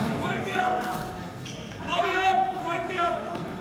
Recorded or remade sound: remade